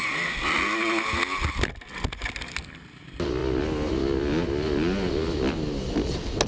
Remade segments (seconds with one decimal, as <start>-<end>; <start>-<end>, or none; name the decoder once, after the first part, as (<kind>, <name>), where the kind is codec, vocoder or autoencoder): none